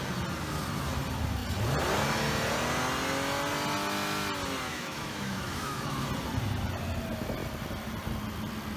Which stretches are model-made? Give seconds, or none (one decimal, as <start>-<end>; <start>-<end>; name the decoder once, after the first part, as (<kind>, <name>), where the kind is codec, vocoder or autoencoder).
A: 4.7-6.1 (autoencoder, DAC-VAE)